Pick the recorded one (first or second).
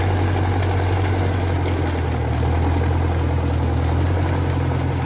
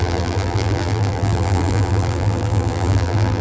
first